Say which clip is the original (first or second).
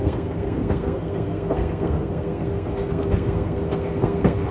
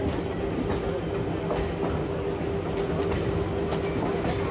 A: second